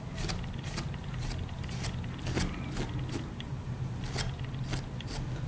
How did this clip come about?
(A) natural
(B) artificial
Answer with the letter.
A